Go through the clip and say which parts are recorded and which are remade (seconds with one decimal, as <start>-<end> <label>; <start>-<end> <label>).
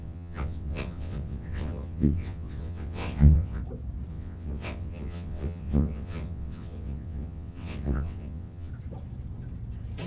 0.0-3.6 remade; 3.6-4.1 recorded; 4.1-8.7 remade; 8.7-10.1 recorded